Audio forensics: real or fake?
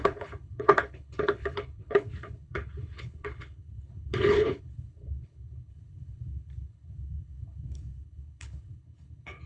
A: fake